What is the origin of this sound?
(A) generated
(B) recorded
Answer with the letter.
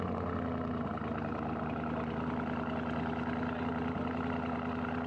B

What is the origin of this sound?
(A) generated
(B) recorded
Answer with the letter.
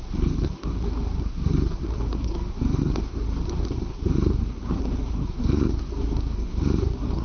A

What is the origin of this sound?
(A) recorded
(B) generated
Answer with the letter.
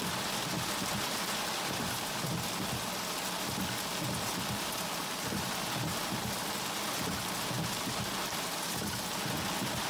A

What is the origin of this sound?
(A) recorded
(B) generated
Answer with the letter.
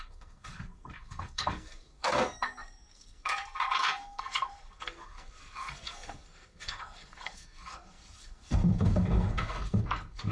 B